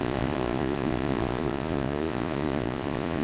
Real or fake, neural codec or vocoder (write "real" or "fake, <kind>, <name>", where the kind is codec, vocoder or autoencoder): fake, vocoder, Vocos